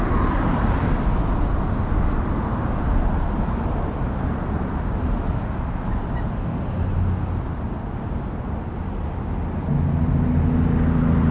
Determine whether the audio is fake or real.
real